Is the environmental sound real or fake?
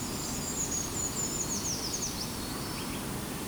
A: real